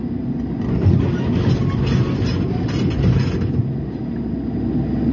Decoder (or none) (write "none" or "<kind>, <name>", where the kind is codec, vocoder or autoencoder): none